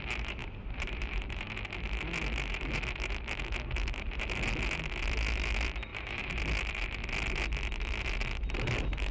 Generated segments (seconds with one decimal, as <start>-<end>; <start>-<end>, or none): 0.4-1.5; 5.9-6.4